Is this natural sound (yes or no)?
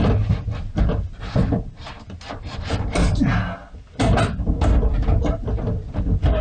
yes